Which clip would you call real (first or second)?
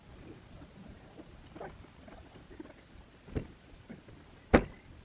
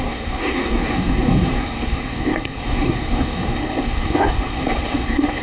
first